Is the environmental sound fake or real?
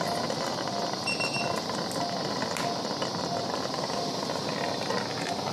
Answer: real